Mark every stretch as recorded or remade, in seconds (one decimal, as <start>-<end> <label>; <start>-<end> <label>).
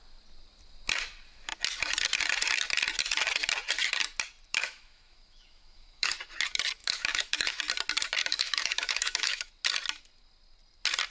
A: 0.0-4.5 recorded; 4.5-6.1 remade; 6.1-6.8 recorded; 6.8-7.6 remade; 7.6-8.2 recorded; 8.2-9.5 remade; 9.5-11.1 recorded